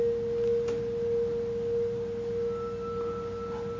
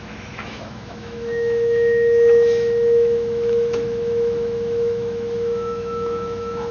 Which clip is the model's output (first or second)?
second